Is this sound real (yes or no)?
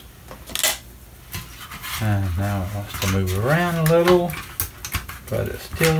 yes